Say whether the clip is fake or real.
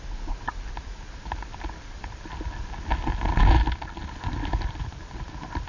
real